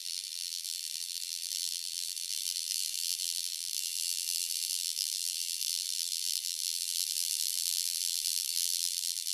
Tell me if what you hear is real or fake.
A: fake